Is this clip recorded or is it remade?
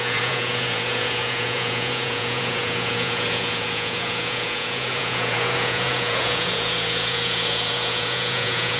remade